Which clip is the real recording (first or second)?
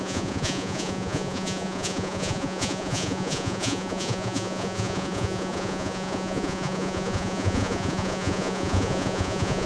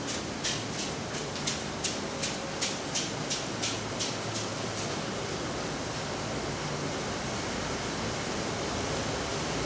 second